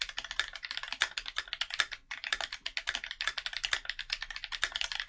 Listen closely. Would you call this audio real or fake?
real